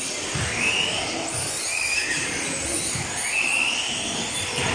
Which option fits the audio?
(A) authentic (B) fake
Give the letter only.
A